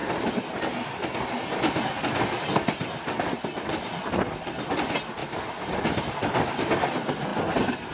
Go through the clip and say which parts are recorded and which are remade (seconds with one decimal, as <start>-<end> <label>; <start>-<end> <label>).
0.0-1.6 remade; 1.6-5.2 recorded; 5.2-6.0 remade; 6.0-7.9 recorded